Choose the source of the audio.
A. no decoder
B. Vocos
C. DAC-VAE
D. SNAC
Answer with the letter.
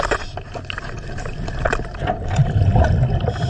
A